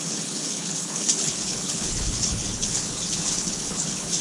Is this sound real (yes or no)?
no